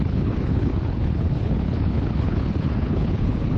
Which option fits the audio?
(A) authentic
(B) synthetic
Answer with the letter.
B